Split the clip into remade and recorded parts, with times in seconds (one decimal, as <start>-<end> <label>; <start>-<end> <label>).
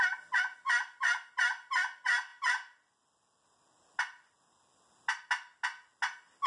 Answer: 0.0-6.5 recorded